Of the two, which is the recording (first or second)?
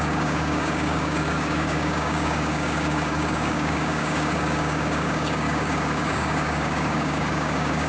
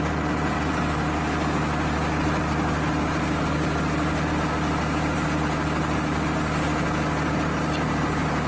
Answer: second